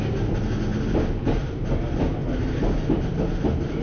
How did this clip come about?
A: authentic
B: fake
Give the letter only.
A